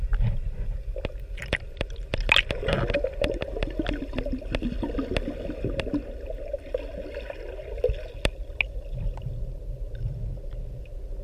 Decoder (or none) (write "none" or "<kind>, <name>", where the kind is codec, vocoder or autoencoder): none